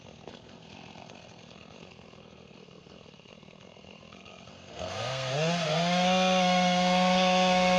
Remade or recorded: remade